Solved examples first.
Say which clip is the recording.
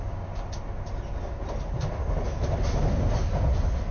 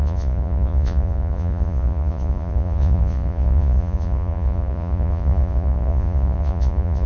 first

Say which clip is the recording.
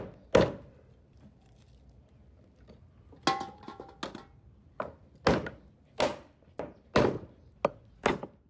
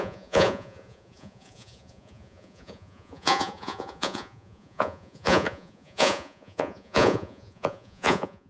first